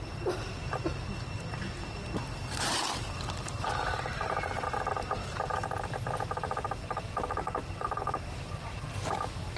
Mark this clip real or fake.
real